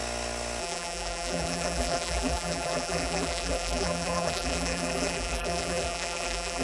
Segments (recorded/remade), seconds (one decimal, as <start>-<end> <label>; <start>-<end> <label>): 0.0-0.6 recorded; 0.6-6.6 remade